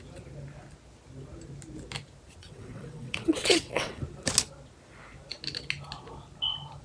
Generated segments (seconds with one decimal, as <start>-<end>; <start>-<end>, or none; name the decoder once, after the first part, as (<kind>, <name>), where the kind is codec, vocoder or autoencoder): 2.4-4.0 (vocoder, WaveNeXt)